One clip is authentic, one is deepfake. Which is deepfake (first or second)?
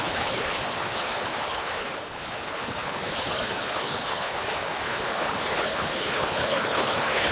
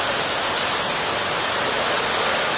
first